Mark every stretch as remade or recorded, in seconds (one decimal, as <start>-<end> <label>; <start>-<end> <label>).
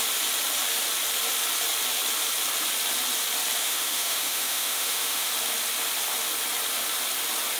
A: 0.0-3.6 recorded; 3.6-5.3 remade; 5.3-7.6 recorded